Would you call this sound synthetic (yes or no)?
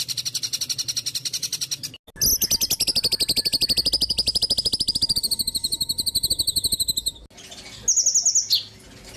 no